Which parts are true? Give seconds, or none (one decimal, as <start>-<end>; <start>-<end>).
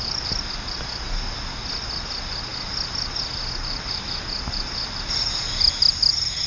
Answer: 0.0-6.5